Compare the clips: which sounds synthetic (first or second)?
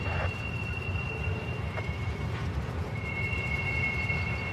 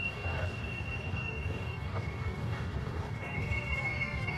second